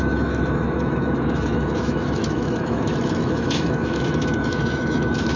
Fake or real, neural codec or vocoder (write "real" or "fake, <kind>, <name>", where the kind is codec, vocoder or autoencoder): fake, autoencoder, DAC-VAE